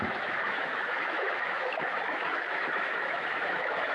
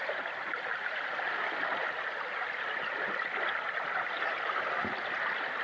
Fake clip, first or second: first